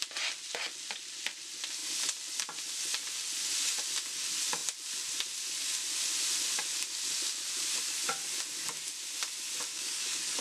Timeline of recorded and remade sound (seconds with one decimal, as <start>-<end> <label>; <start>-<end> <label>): 0.0-9.7 recorded; 9.7-10.4 remade